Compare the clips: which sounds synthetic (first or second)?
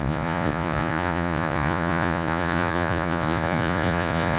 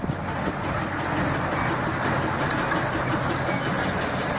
first